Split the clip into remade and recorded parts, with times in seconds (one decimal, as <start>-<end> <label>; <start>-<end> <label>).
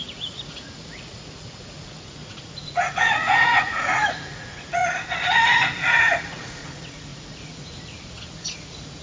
0.0-4.8 remade; 4.8-6.4 recorded; 6.4-9.0 remade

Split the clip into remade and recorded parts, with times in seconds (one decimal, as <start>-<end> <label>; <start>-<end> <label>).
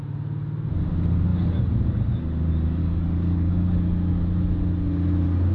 0.0-2.8 recorded; 2.8-3.5 remade; 3.5-5.5 recorded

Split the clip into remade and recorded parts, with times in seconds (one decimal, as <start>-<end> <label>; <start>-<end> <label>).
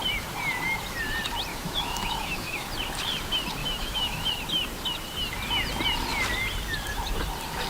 0.0-1.5 recorded; 1.5-2.7 remade; 2.7-3.6 recorded; 3.6-4.3 remade; 4.3-7.7 recorded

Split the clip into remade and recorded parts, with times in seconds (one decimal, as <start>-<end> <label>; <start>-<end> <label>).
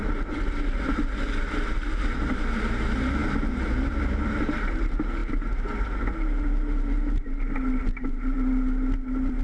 0.0-9.4 remade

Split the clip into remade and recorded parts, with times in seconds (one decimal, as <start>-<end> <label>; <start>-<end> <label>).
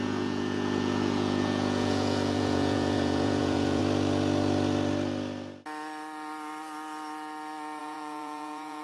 0.0-3.8 remade; 3.8-7.8 recorded; 7.8-8.8 remade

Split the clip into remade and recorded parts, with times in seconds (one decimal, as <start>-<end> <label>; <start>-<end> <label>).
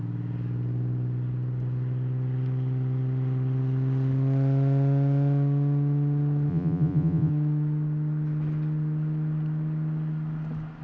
0.0-6.5 recorded; 6.5-7.3 remade; 7.3-10.8 recorded